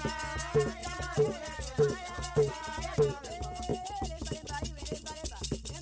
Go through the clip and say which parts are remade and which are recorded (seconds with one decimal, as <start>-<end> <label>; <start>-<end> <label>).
0.0-0.8 recorded; 0.8-2.1 remade; 2.1-3.7 recorded; 3.7-5.3 remade; 5.3-5.8 recorded